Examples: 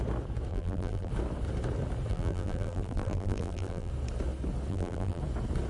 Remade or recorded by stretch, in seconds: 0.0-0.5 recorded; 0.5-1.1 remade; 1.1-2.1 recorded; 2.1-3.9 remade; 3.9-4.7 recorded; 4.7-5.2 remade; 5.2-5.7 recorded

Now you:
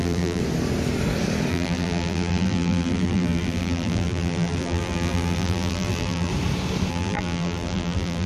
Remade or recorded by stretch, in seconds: 0.0-0.4 remade; 0.4-1.5 recorded; 1.5-6.3 remade; 6.3-6.9 recorded; 6.9-8.3 remade

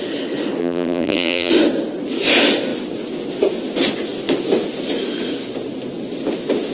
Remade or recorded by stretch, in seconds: 0.0-0.6 recorded; 0.6-1.5 remade; 1.5-6.7 recorded

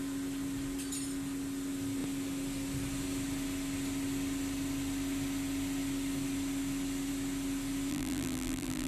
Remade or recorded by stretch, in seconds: 0.0-7.9 recorded; 7.9-8.9 remade

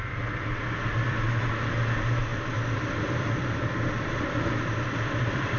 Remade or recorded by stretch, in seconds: 0.0-0.6 recorded; 0.6-1.1 remade; 1.1-2.3 recorded; 2.3-5.6 remade